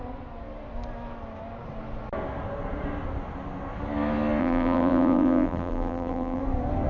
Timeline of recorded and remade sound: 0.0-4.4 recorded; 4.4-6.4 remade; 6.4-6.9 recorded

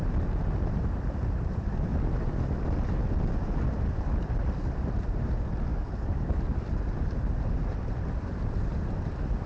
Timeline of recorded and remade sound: 0.0-5.7 recorded; 5.7-6.6 remade; 6.6-9.5 recorded

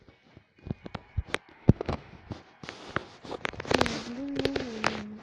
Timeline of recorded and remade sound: 0.0-1.5 recorded; 1.5-2.2 remade; 2.2-5.2 recorded

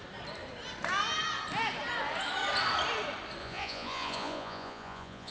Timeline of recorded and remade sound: 0.0-3.4 recorded; 3.4-5.3 remade

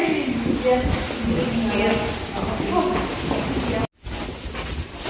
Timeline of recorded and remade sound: 0.0-5.1 recorded

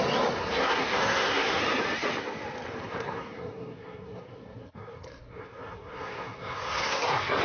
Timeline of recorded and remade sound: 0.0-0.4 recorded; 0.4-1.6 remade; 1.6-2.8 recorded; 2.8-7.4 remade

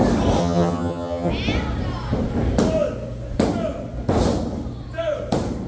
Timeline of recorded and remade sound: 0.0-0.4 recorded; 0.4-1.3 remade; 1.3-5.7 recorded